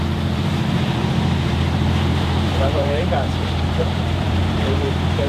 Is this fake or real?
fake